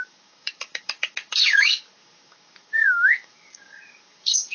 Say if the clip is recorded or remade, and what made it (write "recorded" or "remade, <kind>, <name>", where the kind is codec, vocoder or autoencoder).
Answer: remade, codec, DAC